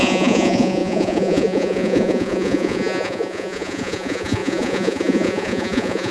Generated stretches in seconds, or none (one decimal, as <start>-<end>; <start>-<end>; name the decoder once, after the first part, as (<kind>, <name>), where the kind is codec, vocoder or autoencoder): 0.0-6.1 (vocoder, Vocos)